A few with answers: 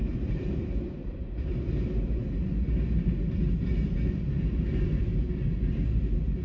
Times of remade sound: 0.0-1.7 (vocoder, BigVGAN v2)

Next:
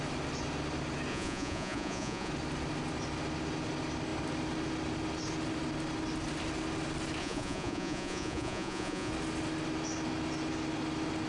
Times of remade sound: 1.1-2.3 (vocoder, Vocos); 7.2-9.1

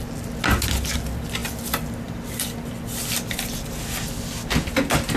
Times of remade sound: none

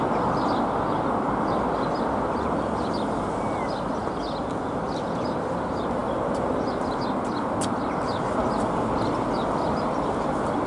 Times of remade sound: none

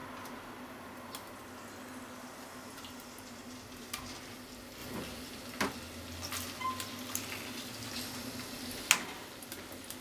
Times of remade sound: none

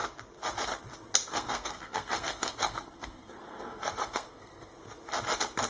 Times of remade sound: 1.3-4.7 (codec, SNAC)

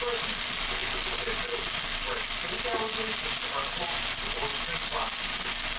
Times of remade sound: none

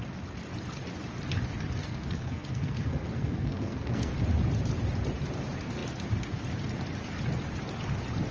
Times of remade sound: 1.8-4.1 (codec, SNAC)